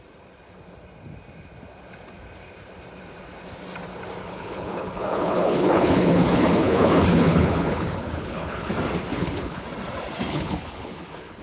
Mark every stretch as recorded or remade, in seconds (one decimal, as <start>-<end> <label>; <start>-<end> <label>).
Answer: 0.0-4.2 recorded; 4.2-8.7 remade; 8.7-9.1 recorded; 9.1-9.6 remade; 9.6-10.3 recorded; 10.3-11.4 remade